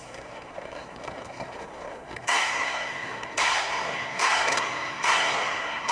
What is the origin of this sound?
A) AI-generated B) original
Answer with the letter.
A